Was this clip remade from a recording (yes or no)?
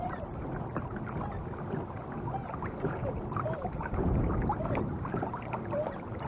yes